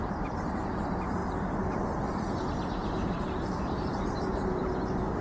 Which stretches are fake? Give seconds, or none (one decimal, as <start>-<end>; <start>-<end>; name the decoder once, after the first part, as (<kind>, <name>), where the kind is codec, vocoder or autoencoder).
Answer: 2.8-4.7 (vocoder, BigVGAN v2)